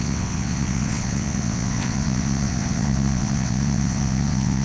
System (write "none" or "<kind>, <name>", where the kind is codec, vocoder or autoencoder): vocoder, WaveNeXt